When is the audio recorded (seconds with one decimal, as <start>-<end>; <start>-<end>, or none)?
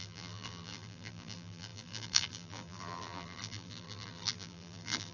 none